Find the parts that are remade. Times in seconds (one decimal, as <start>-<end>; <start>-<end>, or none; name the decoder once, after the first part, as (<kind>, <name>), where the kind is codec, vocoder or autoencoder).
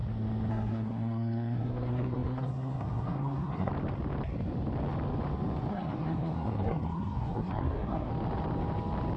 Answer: 0.5-3.7 (codec, SNAC); 5.7-8.1